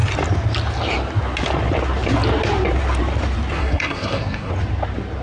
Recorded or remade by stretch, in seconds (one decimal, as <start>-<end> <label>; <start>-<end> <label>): 0.0-3.6 recorded; 3.6-4.5 remade; 4.5-5.2 recorded